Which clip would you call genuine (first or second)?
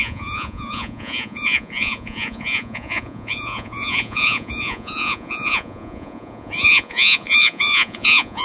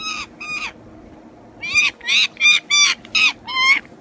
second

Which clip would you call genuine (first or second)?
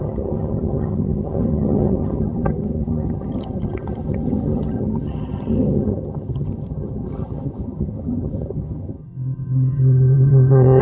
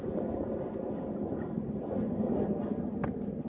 second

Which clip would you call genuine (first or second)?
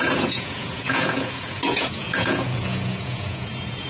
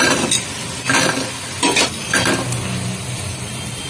second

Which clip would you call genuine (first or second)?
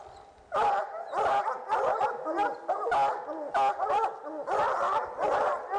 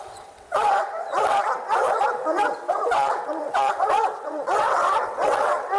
first